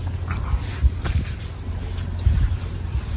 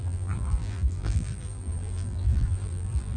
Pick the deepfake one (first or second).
second